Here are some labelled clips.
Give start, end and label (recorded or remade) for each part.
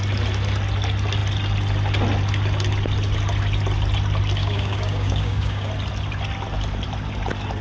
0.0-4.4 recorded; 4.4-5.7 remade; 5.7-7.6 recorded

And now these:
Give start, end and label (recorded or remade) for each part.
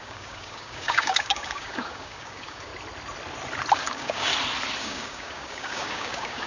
0.0-2.7 remade; 2.7-3.7 recorded; 3.7-4.3 remade; 4.3-4.8 recorded; 4.8-6.5 remade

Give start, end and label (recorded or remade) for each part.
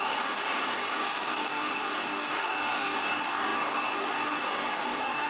0.0-5.3 remade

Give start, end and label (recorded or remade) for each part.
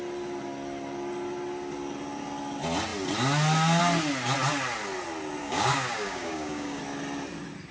0.0-5.4 recorded; 5.4-6.8 remade; 6.8-7.7 recorded